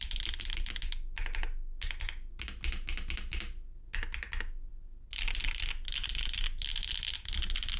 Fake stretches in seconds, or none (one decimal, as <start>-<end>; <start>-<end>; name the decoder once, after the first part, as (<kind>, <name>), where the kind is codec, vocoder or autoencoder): none